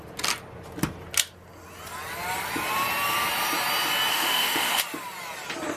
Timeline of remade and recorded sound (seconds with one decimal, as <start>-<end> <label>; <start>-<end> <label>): 0.0-4.1 recorded; 4.1-4.8 remade; 4.8-5.8 recorded